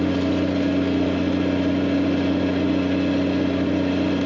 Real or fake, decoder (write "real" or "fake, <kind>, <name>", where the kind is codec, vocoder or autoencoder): real